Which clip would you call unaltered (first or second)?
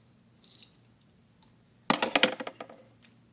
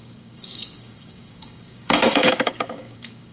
first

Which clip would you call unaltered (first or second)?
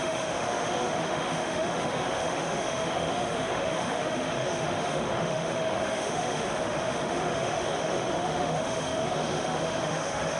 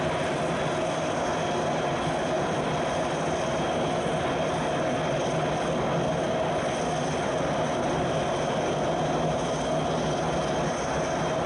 second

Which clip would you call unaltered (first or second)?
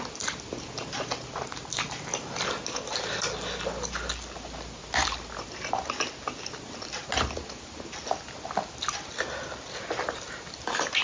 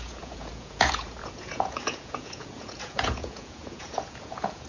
first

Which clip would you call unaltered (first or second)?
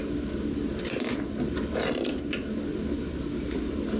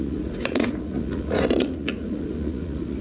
first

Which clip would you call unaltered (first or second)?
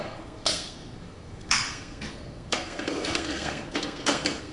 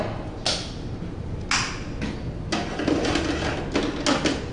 second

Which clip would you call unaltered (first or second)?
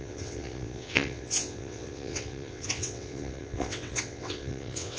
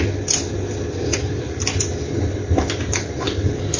second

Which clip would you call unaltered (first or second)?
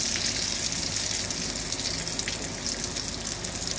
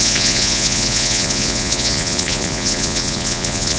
first